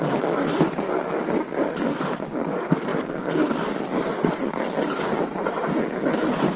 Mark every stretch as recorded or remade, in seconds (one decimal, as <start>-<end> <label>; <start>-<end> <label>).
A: 0.0-6.6 recorded